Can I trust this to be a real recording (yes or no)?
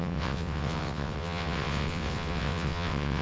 no